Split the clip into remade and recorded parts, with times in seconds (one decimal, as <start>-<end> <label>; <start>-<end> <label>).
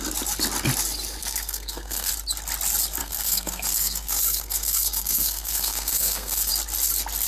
0.0-1.2 recorded; 1.2-2.1 remade; 2.1-3.0 recorded; 3.0-6.5 remade; 6.5-7.3 recorded